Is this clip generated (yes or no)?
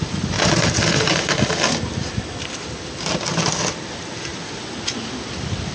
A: yes